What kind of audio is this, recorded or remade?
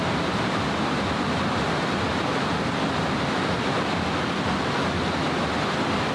recorded